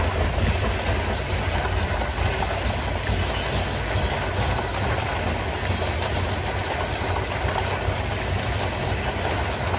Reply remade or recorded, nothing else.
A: recorded